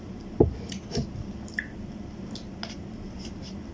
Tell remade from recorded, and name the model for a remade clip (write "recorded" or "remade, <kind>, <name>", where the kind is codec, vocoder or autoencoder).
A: recorded